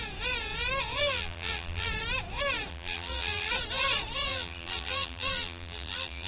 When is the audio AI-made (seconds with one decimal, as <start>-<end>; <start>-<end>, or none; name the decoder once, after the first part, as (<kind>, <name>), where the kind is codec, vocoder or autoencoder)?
1.0-1.9 (vocoder, BigVGAN v2); 2.7-3.5; 4.3-6.3